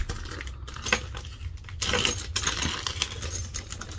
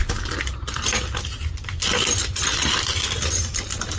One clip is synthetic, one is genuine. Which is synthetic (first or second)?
second